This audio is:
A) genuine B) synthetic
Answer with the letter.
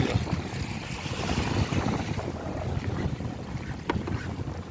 A